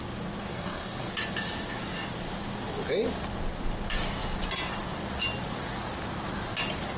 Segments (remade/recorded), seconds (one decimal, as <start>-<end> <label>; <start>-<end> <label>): 0.0-0.5 recorded; 0.5-1.1 remade; 1.1-7.0 recorded

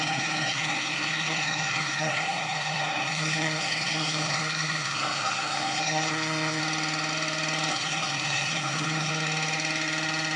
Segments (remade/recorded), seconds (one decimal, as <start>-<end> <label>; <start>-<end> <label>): 0.0-6.6 remade; 6.6-7.7 recorded; 7.7-9.1 remade; 9.1-10.4 recorded

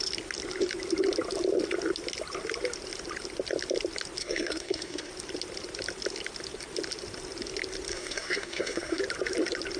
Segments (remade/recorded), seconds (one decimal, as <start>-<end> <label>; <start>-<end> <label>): 0.0-4.2 recorded; 4.2-5.1 remade; 5.1-7.9 recorded; 7.9-9.0 remade; 9.0-9.8 recorded

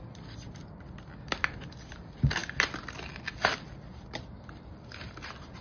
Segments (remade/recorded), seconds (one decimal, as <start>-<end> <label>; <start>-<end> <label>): 0.0-5.6 recorded